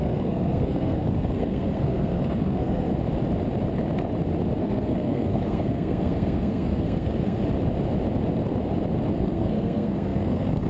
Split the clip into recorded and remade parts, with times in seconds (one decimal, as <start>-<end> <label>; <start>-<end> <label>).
0.0-2.9 remade; 2.9-4.6 recorded; 4.6-7.4 remade; 7.4-9.1 recorded; 9.1-10.7 remade